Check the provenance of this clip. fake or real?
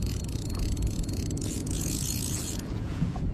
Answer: fake